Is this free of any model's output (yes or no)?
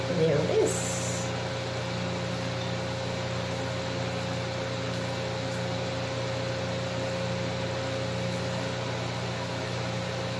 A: yes